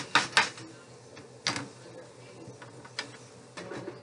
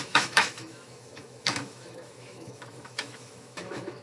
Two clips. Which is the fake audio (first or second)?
second